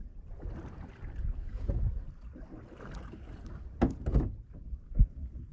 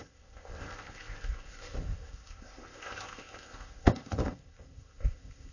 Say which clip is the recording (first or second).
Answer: first